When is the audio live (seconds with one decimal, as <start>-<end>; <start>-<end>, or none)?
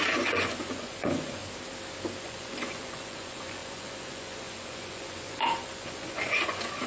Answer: 1.4-2.2